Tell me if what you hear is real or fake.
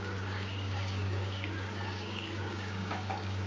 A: fake